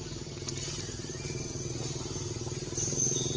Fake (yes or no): no